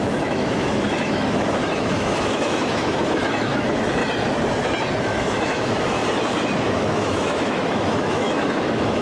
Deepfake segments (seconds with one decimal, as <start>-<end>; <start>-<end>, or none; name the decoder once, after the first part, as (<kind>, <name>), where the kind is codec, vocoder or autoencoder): 0.0-4.0 (autoencoder, DAC-VAE); 5.0-6.0; 6.6-9.0